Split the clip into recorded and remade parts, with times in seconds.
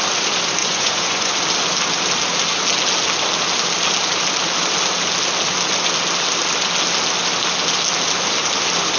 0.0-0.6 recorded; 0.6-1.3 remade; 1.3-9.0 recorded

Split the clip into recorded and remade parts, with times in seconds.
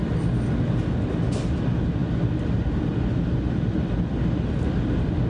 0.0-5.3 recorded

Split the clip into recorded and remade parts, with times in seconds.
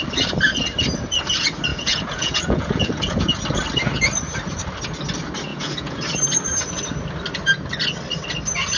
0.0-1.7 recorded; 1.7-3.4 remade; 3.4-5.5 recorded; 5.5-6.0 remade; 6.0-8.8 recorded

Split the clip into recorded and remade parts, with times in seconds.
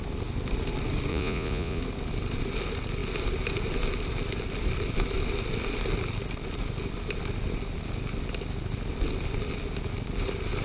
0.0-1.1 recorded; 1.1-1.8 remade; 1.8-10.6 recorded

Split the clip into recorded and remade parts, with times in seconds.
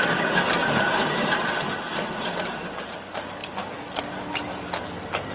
0.0-5.3 recorded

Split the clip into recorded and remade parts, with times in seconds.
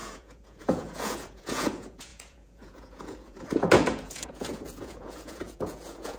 0.0-6.2 remade